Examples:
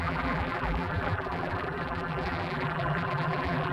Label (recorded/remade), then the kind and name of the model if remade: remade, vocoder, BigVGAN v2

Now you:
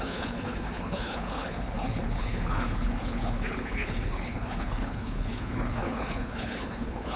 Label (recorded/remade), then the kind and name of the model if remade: remade, codec, HILCodec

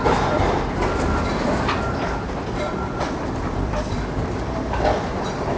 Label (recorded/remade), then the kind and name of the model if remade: remade, vocoder, BigVGAN v2